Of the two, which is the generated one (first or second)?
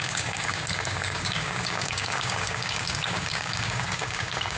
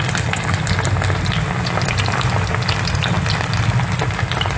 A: first